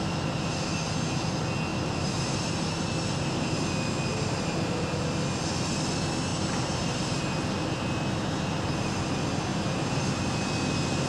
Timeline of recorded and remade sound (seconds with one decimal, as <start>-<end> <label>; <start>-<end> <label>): 0.0-1.7 recorded; 1.7-2.7 remade; 2.7-4.1 recorded; 4.1-4.9 remade; 4.9-6.3 recorded; 6.3-7.2 remade; 7.2-9.5 recorded; 9.5-10.1 remade; 10.1-11.1 recorded